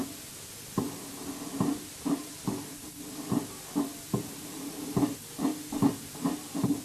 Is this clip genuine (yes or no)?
yes